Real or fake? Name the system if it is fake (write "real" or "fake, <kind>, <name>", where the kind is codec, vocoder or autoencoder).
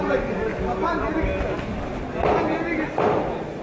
real